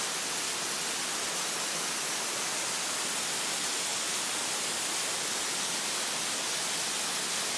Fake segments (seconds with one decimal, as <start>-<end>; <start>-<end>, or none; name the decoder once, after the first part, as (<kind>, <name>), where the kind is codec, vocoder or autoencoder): none